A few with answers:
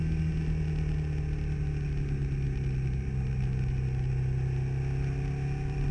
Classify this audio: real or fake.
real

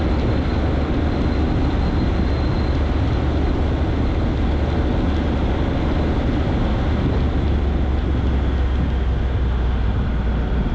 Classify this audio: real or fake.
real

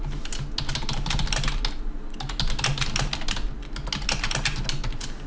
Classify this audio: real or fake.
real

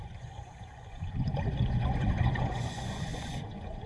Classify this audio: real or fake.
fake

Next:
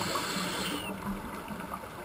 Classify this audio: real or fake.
real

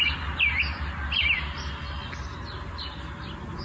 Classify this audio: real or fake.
real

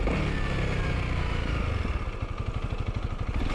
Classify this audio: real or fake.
real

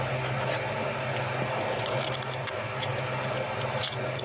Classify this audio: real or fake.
real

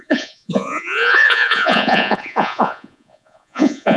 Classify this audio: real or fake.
fake